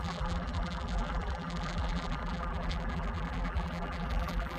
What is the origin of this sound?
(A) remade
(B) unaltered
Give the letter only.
A